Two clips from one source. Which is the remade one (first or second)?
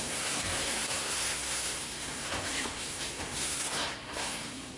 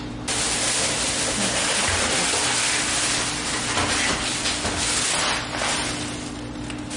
first